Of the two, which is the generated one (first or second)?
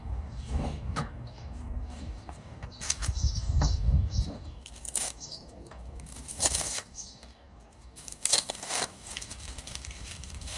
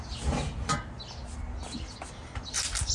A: first